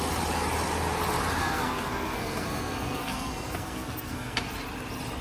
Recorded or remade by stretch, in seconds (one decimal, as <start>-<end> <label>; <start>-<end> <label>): 0.0-1.4 recorded; 1.4-4.5 remade; 4.5-5.2 recorded